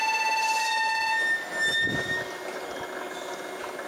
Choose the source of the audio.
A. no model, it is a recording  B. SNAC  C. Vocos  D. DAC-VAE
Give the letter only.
A